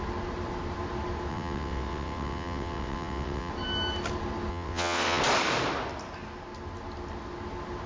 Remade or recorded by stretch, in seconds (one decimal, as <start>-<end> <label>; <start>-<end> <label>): 0.0-1.3 recorded; 1.3-3.5 remade; 3.5-4.5 recorded; 4.5-5.2 remade; 5.2-7.9 recorded